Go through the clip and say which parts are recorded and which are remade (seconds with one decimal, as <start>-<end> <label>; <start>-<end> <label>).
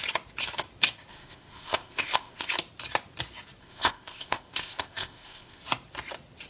0.0-1.1 recorded; 1.1-2.5 remade; 2.5-3.6 recorded; 3.6-5.6 remade; 5.6-6.5 recorded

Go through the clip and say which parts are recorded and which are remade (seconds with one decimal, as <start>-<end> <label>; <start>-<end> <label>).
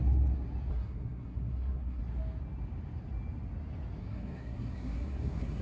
0.0-0.7 recorded; 0.7-2.0 remade; 2.0-4.0 recorded; 4.0-5.6 remade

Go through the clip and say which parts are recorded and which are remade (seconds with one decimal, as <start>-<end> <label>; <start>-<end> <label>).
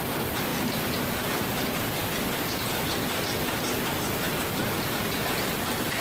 0.0-0.5 remade; 0.5-1.0 recorded; 1.0-2.0 remade; 2.0-4.6 recorded; 4.6-6.0 remade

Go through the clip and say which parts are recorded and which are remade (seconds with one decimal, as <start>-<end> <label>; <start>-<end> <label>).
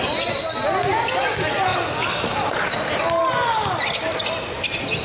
0.0-5.0 recorded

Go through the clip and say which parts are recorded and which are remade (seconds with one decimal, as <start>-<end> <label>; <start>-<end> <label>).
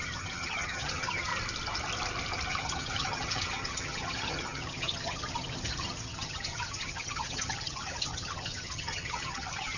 0.0-1.3 remade; 1.3-2.5 recorded; 2.5-9.8 remade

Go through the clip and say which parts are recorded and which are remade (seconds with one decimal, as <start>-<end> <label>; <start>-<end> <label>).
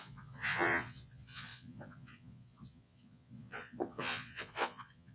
0.0-5.1 remade